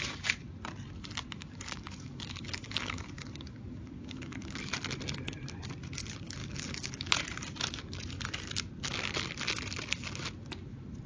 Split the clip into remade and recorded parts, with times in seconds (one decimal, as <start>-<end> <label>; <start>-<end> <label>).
0.0-1.4 recorded; 1.4-4.7 remade; 4.7-6.4 recorded; 6.4-7.1 remade; 7.1-11.1 recorded